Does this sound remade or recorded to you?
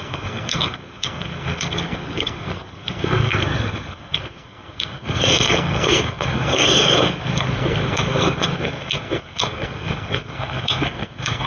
remade